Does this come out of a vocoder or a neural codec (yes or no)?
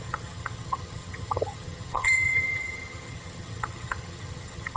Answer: yes